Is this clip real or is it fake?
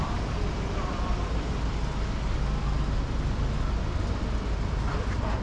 real